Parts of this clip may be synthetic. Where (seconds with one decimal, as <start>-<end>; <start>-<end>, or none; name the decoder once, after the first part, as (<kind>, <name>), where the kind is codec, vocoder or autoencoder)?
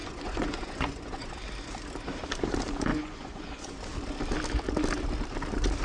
0.0-1.4 (vocoder, Vocos); 2.9-3.8